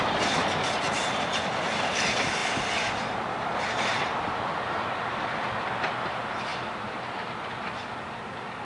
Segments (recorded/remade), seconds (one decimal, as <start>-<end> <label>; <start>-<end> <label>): 0.0-8.6 recorded